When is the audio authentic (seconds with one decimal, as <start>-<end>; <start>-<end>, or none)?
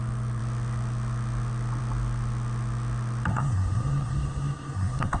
0.0-3.3